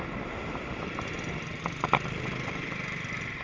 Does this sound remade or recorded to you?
recorded